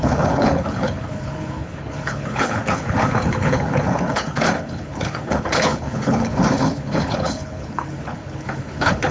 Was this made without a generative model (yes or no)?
no